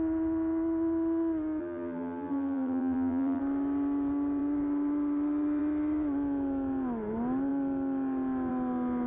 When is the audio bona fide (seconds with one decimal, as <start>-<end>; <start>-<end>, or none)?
0.0-1.6; 3.4-9.1